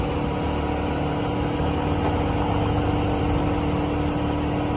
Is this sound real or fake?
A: real